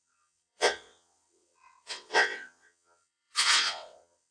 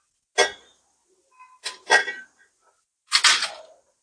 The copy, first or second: first